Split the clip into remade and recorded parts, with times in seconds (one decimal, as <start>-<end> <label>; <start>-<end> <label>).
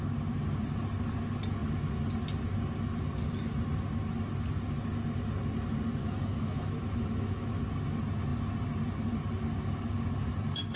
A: 0.0-6.0 recorded; 6.0-7.5 remade; 7.5-10.8 recorded